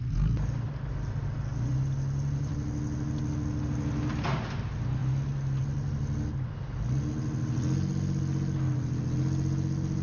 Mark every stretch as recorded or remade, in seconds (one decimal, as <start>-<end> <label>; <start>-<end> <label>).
0.0-10.0 recorded